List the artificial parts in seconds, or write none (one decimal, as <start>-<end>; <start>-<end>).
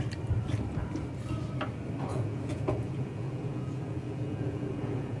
2.1-5.2